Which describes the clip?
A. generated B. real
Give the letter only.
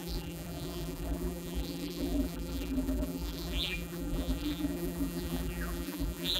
A